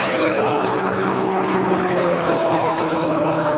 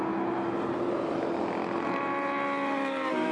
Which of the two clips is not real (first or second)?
first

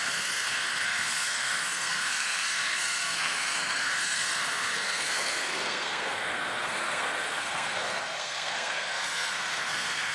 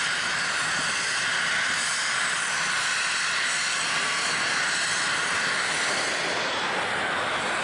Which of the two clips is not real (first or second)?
first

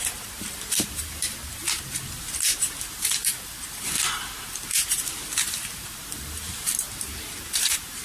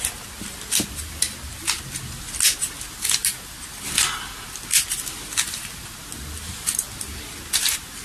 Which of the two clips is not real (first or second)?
first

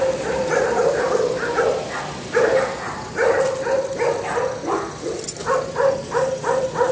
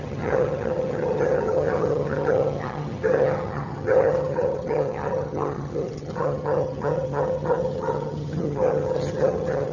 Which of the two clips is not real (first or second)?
second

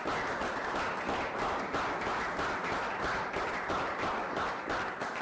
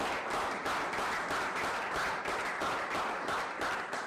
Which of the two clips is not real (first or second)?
second